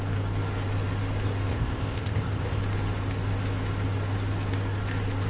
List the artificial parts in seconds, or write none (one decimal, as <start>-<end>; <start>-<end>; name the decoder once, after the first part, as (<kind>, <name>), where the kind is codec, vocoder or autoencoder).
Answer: 1.5-2.6 (codec, ZipCodec)

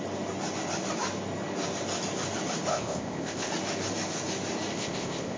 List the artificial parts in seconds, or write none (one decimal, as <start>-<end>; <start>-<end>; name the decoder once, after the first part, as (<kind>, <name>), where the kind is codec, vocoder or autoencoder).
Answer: 2.7-3.5 (codec, ZipCodec); 4.7-5.4